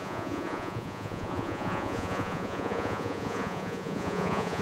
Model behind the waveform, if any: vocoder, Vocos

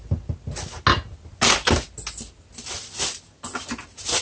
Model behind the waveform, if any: none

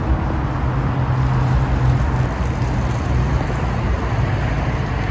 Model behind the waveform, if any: none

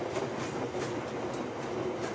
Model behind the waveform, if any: none